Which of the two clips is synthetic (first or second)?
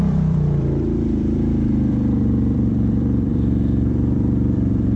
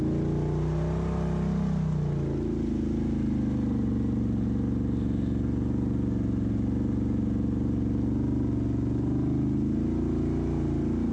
first